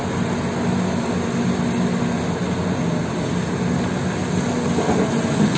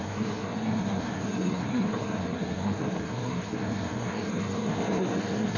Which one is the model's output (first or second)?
second